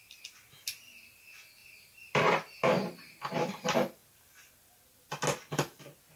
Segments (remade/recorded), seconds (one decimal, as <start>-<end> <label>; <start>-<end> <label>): 0.0-1.6 recorded; 1.6-3.5 remade; 3.5-6.2 recorded